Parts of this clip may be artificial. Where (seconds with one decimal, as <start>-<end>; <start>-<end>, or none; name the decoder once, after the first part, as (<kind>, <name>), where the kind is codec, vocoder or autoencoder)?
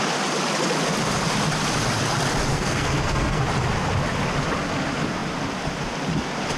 2.5-3.4 (codec, SNAC)